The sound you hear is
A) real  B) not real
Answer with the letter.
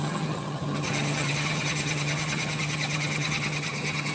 B